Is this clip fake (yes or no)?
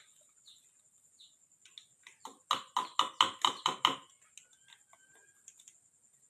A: no